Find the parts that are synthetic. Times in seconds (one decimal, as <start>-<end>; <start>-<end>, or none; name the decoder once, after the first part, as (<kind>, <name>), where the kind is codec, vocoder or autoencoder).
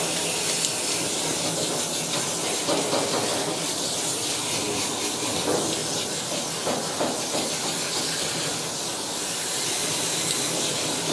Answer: none